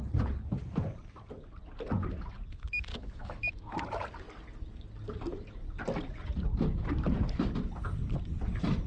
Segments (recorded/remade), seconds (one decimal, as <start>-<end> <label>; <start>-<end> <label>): 0.0-2.9 recorded; 2.9-3.7 remade; 3.7-8.9 recorded